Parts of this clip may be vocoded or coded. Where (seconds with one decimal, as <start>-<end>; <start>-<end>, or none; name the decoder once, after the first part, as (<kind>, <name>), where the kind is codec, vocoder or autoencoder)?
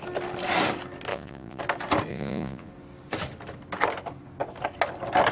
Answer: 1.1-1.6 (vocoder, Vocos); 2.1-2.7